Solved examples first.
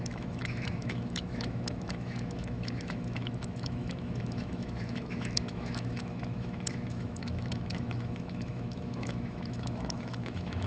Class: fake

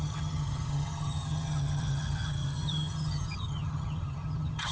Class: fake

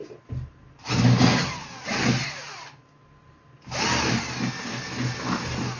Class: real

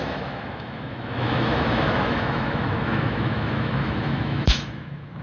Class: fake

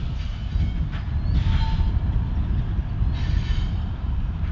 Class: real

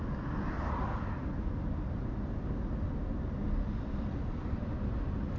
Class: real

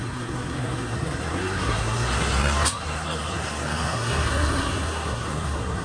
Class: fake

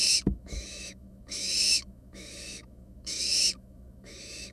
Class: fake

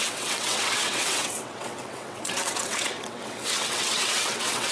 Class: fake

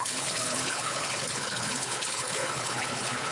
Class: fake